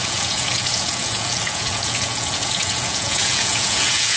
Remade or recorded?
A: remade